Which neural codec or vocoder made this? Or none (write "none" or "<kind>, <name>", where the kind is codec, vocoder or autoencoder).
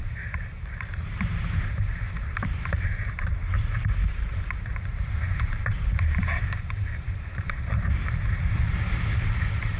vocoder, BigVGAN v2